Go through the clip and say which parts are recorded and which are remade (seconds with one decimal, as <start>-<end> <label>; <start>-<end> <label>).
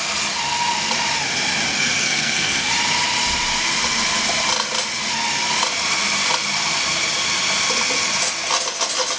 0.0-1.7 recorded; 1.7-2.7 remade; 2.7-9.2 recorded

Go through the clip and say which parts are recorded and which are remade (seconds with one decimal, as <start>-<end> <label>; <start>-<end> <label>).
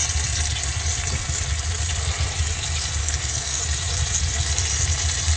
0.0-3.0 recorded; 3.0-3.6 remade; 3.6-5.4 recorded